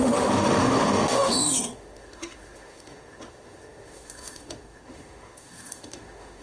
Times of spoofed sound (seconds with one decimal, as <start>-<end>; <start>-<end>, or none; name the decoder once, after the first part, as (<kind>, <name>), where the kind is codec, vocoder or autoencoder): 0.0-6.4 (autoencoder, DAC-VAE)